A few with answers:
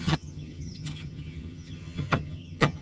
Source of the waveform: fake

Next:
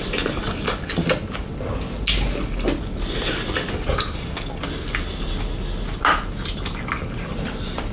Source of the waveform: real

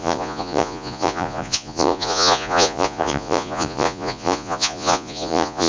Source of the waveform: fake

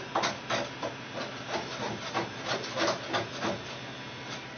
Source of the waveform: real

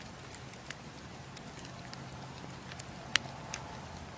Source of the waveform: real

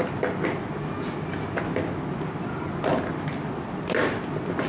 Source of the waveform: real